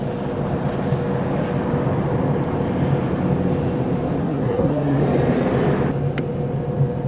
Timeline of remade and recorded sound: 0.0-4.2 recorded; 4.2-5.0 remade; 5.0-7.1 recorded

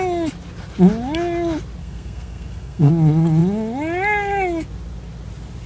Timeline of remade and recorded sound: 0.0-1.8 recorded; 1.8-2.9 remade; 2.9-5.7 recorded

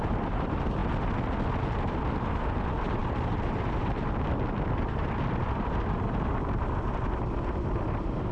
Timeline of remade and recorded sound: 0.0-0.8 remade; 0.8-2.6 recorded; 2.6-3.0 remade; 3.0-4.5 recorded; 4.5-8.3 remade

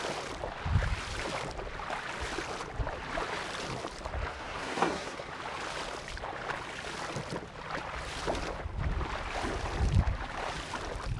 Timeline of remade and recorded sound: 0.0-4.3 recorded; 4.3-5.3 remade; 5.3-11.2 recorded

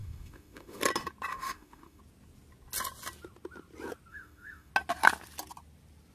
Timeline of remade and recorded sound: 0.0-0.8 remade; 0.8-1.3 recorded; 1.3-2.0 remade; 2.0-4.1 recorded; 4.1-4.7 remade; 4.7-6.1 recorded

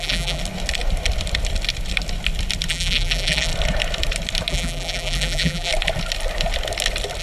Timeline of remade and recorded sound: 0.0-0.4 remade; 0.4-2.7 recorded; 2.7-3.5 remade; 3.5-4.5 recorded; 4.5-5.7 remade; 5.7-7.2 recorded